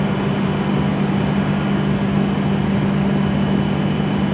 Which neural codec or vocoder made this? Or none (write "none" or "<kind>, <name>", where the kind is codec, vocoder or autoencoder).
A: none